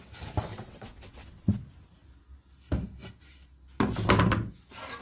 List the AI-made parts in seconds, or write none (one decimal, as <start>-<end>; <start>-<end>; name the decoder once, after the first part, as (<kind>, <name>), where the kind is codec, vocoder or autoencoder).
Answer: 0.5-1.5 (vocoder, WaveNeXt)